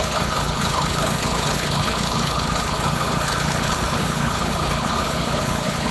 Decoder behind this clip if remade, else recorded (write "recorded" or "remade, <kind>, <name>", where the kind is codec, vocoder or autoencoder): remade, codec, HILCodec